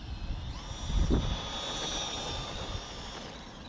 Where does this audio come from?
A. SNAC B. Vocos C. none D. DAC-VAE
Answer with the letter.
C